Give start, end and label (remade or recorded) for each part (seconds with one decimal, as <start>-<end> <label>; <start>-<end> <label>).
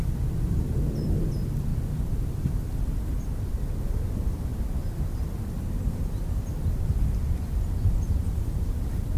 0.0-1.7 recorded; 1.7-2.7 remade; 2.7-3.1 recorded; 3.1-3.8 remade; 3.8-4.5 recorded; 4.5-7.0 remade; 7.0-8.2 recorded; 8.2-9.2 remade